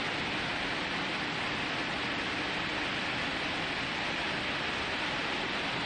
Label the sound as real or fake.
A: real